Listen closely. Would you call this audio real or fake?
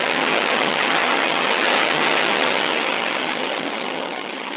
fake